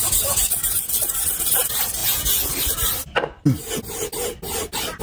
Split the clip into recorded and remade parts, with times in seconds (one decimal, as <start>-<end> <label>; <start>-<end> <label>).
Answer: 0.0-2.0 recorded; 2.0-2.5 remade; 2.5-5.0 recorded